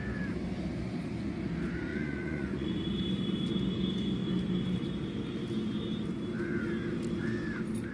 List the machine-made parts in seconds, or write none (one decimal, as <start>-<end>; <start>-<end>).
1.9-2.7